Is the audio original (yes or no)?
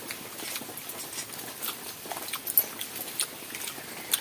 yes